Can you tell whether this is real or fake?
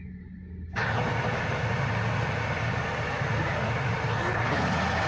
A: real